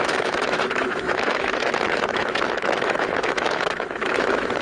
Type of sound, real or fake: fake